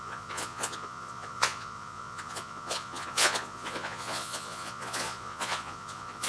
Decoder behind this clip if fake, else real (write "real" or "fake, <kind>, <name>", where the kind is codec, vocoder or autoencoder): fake, vocoder, Vocos